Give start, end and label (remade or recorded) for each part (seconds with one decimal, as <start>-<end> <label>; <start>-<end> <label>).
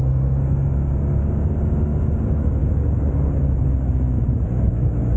0.0-1.2 remade; 1.2-2.0 recorded; 2.0-2.6 remade; 2.6-3.4 recorded; 3.4-5.2 remade